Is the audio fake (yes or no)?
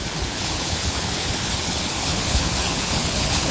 yes